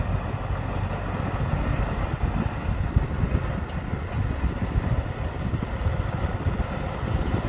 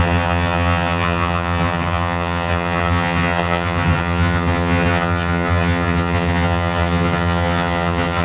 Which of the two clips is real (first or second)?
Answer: first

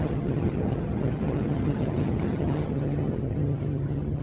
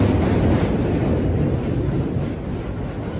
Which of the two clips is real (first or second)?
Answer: second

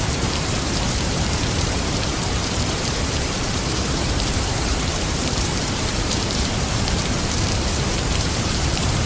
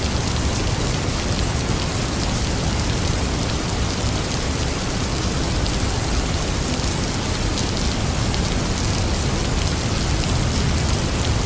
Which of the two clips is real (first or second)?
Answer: second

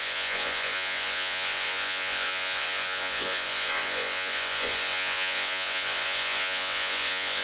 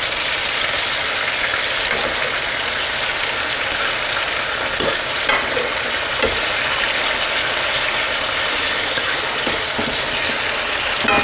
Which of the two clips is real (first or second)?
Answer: second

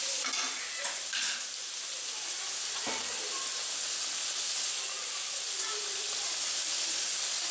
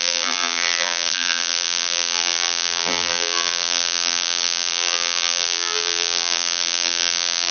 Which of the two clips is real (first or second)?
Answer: first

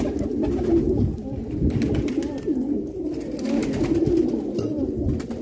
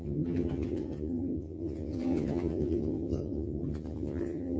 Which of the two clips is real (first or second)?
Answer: first